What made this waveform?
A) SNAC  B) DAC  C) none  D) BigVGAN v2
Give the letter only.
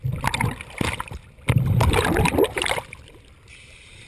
C